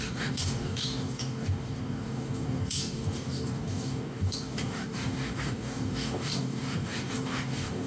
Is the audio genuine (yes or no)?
no